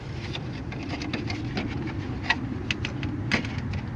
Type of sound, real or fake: real